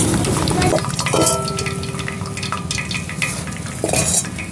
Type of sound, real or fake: real